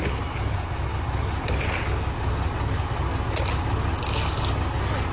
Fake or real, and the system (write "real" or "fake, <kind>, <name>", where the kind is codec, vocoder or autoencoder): real